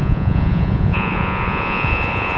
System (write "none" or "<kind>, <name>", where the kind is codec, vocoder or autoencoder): vocoder, Vocos